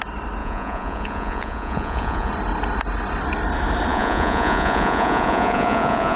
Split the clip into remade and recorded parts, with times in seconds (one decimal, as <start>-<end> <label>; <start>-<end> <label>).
0.0-0.4 recorded; 0.4-2.3 remade; 2.3-3.9 recorded; 3.9-6.2 remade